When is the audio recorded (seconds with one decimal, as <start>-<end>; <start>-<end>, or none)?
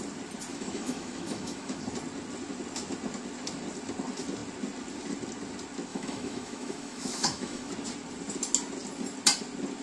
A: 0.0-0.5; 1.8-5.9; 7.7-9.8